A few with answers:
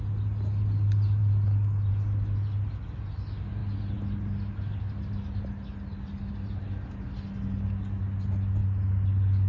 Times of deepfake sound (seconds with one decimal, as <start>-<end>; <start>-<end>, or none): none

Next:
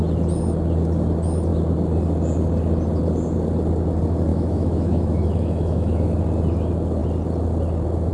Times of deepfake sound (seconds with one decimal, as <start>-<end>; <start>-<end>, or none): 4.3-6.2

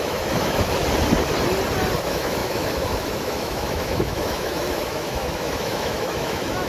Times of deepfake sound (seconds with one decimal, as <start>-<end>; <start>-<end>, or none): 0.0-0.8; 2.0-6.7

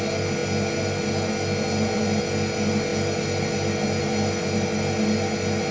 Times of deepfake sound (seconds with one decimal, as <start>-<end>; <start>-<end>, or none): none

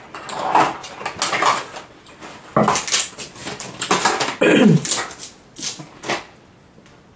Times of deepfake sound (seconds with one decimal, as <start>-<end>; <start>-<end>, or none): none

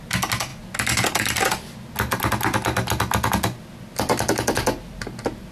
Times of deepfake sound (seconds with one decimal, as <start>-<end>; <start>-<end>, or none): none

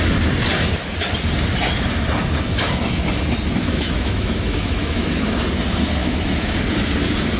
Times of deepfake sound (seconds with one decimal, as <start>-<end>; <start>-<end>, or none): 3.6-5.1; 6.0-6.6

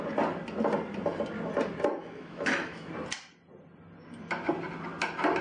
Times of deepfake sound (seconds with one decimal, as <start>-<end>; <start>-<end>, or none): 2.0-2.9